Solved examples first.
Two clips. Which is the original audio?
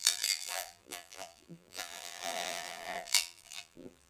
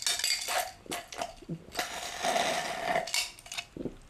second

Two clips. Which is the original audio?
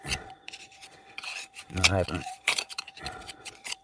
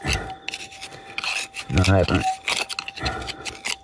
second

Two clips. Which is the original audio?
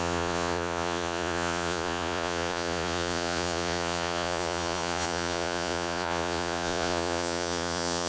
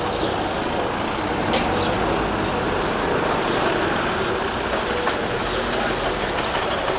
second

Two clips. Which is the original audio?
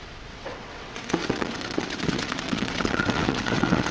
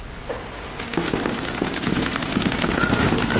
second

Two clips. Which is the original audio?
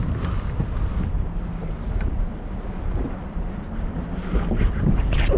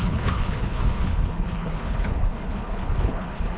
first